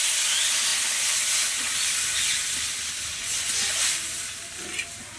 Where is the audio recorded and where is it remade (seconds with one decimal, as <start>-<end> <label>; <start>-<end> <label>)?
0.0-3.1 recorded; 3.1-3.7 remade; 3.7-5.2 recorded